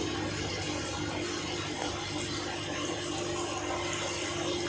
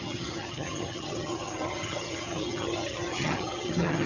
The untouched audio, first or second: first